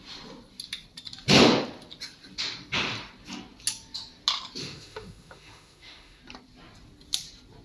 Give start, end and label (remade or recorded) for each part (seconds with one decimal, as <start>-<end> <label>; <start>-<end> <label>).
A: 0.0-4.6 recorded; 4.6-6.2 remade; 6.2-7.6 recorded